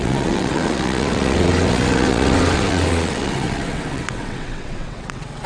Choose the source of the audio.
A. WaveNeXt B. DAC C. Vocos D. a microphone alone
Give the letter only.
A